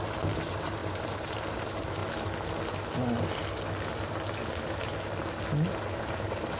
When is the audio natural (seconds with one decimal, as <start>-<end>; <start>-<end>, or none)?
2.0-6.0